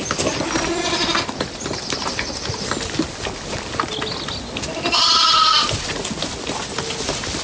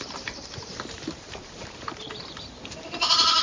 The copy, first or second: second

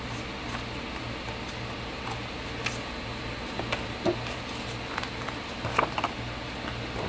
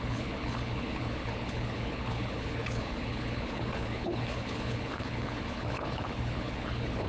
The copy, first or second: second